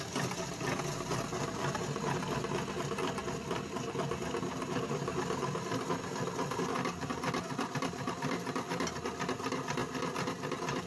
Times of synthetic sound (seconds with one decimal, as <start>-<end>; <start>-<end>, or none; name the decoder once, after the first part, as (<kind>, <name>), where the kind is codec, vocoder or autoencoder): none